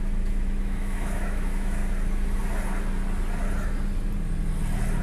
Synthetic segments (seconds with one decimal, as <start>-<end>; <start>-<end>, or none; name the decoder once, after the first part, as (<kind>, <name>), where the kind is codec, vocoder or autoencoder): 0.0-1.8 (autoencoder, DAC-VAE)